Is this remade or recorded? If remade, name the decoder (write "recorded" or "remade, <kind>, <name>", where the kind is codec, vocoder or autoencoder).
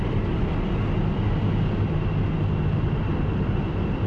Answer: recorded